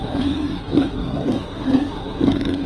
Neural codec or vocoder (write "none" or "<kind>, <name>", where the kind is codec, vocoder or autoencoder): codec, SNAC